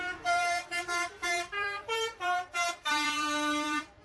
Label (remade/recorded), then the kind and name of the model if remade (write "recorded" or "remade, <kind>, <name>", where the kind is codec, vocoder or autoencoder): remade, vocoder, BigVGAN v2